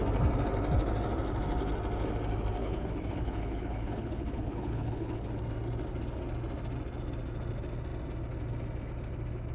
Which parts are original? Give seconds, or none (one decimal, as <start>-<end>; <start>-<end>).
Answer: 0.0-2.6; 5.3-9.5